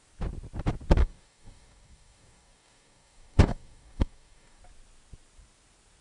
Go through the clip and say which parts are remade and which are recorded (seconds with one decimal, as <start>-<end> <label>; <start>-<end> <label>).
0.0-1.0 recorded; 1.0-4.6 remade; 4.6-6.0 recorded